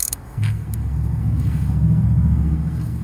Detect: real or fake fake